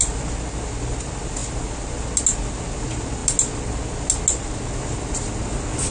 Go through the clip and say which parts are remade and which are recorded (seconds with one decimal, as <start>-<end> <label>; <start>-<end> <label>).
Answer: 0.0-5.9 recorded